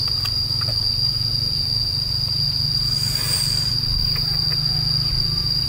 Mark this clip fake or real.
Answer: real